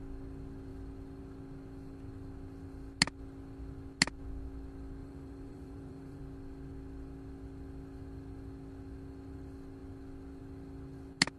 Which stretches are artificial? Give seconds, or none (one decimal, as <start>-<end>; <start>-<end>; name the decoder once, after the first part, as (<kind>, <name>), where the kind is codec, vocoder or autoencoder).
5.0-6.2 (vocoder, BigVGAN v2)